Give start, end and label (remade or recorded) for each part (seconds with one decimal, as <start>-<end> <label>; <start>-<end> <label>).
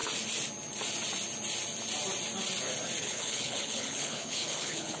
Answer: 0.0-3.0 recorded; 3.0-5.0 remade